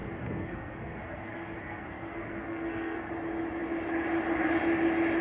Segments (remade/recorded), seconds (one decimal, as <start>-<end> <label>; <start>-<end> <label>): 0.0-3.1 remade; 3.1-5.2 recorded